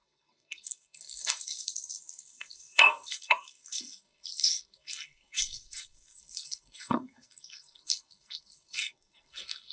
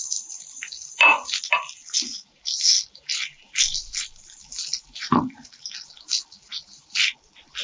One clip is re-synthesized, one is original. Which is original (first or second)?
second